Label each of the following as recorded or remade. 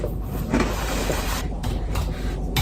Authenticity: remade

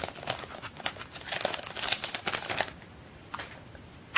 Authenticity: remade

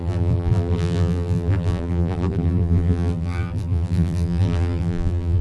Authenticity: remade